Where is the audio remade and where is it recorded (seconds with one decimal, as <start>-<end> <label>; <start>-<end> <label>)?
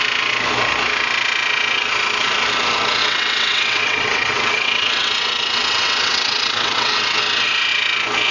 0.0-3.0 recorded; 3.0-7.2 remade; 7.2-8.3 recorded